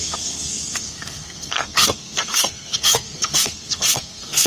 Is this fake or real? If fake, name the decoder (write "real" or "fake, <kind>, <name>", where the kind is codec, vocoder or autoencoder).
fake, codec, SNAC